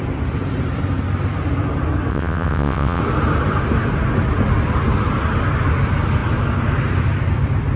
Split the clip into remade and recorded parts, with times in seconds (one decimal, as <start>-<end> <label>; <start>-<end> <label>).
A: 0.0-2.1 recorded; 2.1-3.0 remade; 3.0-7.8 recorded